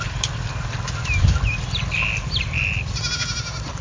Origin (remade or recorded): recorded